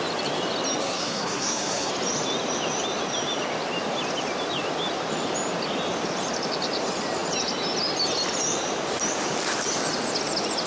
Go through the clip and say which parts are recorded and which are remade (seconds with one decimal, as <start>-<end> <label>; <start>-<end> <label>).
0.0-0.8 recorded; 0.8-1.9 remade; 1.9-10.7 recorded